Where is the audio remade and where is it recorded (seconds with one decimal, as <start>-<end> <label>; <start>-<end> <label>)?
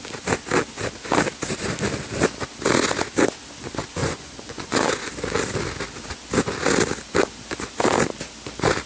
0.0-4.0 recorded; 4.0-5.1 remade; 5.1-8.9 recorded